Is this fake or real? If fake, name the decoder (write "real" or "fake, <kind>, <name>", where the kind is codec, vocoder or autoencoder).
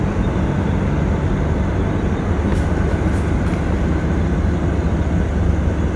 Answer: real